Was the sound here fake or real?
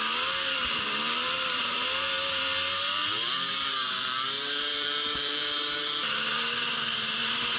fake